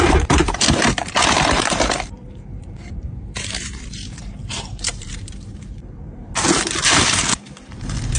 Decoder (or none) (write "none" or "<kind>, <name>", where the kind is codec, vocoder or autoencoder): vocoder, BigVGAN v2